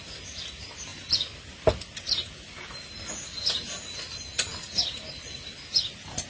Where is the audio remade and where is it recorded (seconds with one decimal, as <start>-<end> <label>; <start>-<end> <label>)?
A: 0.0-6.3 recorded